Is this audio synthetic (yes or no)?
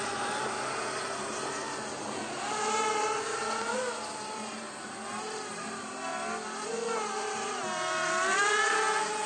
no